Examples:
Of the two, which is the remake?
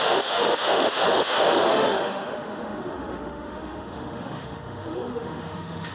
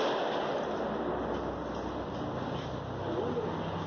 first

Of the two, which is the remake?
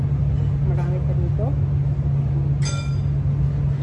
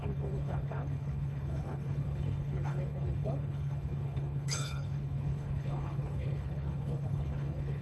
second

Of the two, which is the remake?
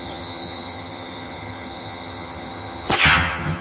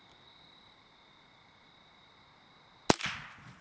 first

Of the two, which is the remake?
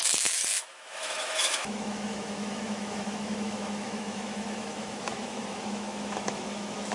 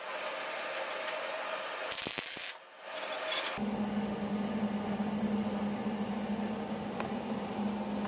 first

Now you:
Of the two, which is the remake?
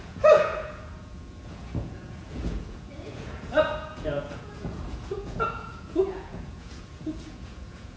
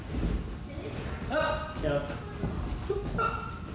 first